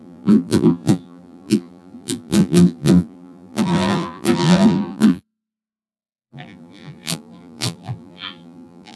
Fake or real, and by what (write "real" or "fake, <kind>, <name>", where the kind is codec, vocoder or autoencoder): fake, vocoder, BigVGAN v2